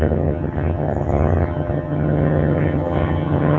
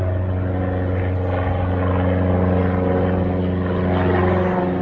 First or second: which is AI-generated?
first